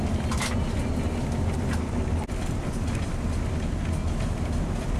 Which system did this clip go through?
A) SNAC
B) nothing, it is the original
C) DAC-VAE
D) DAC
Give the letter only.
B